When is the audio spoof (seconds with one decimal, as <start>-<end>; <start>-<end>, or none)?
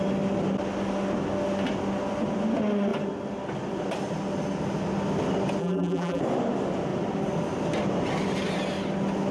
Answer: 5.6-6.2